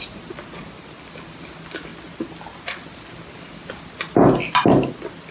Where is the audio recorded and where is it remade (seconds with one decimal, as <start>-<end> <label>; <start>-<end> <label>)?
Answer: 0.0-5.3 recorded